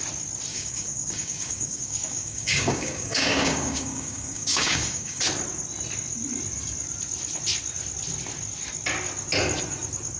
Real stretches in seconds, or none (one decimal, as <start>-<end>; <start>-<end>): 0.0-0.5; 5.2-10.2